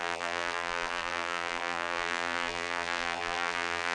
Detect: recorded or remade remade